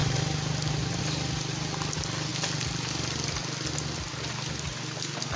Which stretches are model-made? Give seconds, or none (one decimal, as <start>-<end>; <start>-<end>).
none